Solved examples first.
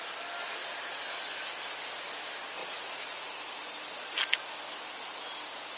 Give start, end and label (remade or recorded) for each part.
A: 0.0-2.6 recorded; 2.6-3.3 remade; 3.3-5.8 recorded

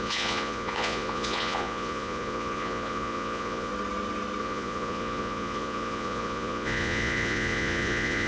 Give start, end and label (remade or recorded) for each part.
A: 0.0-3.7 remade; 3.7-4.4 recorded; 4.4-8.3 remade

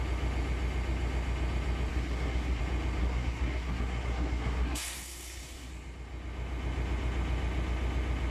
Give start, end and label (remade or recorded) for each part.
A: 0.0-1.9 recorded; 1.9-2.6 remade; 2.6-3.0 recorded; 3.0-5.7 remade; 5.7-8.3 recorded

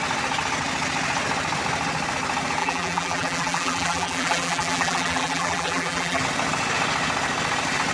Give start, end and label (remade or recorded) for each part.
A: 0.0-2.6 recorded; 2.6-6.2 remade; 6.2-7.9 recorded

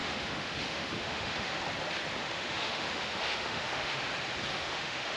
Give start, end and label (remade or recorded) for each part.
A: 0.0-1.6 remade; 1.6-2.2 recorded; 2.2-4.0 remade; 4.0-4.5 recorded; 4.5-5.2 remade